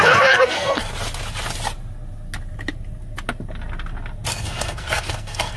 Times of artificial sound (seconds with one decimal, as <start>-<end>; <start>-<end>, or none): 0.0-0.9; 4.3-5.6